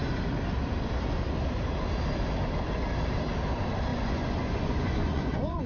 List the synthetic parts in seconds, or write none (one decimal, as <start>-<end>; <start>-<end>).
3.9-5.7